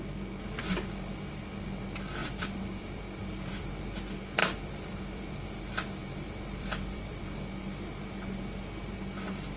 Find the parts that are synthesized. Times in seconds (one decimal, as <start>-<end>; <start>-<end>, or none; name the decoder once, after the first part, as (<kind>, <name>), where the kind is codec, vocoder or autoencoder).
2.2-3.7 (vocoder, BigVGAN v2); 4.4-5.6; 6.0-7.2